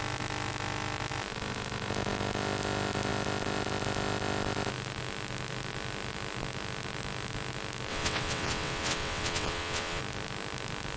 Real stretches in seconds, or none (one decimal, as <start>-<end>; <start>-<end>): 0.0-7.9; 10.0-11.0

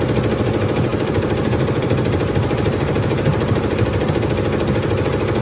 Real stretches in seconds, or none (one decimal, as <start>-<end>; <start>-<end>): 0.0-0.9; 4.1-5.4

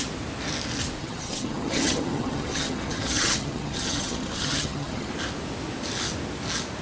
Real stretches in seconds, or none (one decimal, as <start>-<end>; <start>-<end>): 0.0-1.0; 5.1-6.8

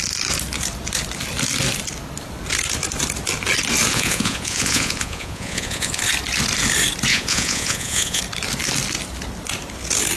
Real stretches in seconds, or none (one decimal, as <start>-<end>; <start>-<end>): 0.0-3.9; 6.0-7.1; 8.2-10.2